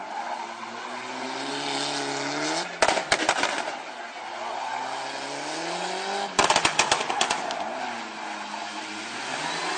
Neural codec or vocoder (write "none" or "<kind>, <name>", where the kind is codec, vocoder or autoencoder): none